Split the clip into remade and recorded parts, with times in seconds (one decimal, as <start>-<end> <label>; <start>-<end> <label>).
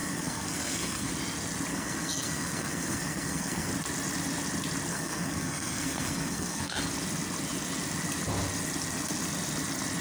0.0-1.1 remade; 1.1-1.7 recorded; 1.7-3.7 remade; 3.7-4.9 recorded; 4.9-6.8 remade; 6.8-10.0 recorded